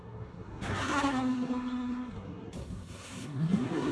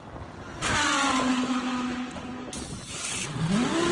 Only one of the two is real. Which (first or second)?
second